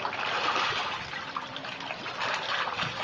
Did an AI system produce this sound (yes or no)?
no